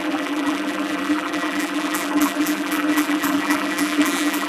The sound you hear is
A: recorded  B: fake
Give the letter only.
B